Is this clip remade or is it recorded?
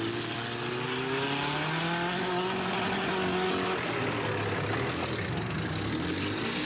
recorded